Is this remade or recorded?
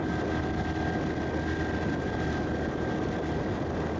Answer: recorded